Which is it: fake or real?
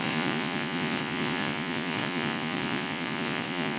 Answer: fake